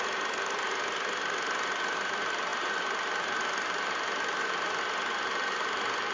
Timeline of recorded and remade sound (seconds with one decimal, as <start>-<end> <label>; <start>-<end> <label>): 0.0-6.1 recorded